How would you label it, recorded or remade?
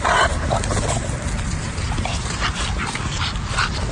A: recorded